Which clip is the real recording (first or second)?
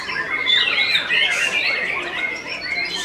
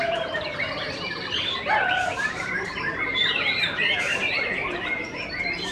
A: first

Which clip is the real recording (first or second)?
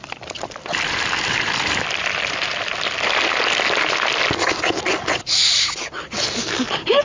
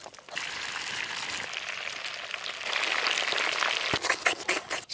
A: second